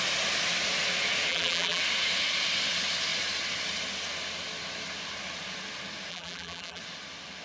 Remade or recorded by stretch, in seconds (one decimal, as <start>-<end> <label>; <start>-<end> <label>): 0.0-1.3 recorded; 1.3-1.8 remade; 1.8-6.1 recorded; 6.1-6.8 remade; 6.8-7.4 recorded